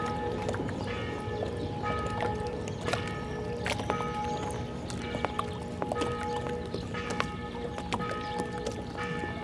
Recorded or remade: remade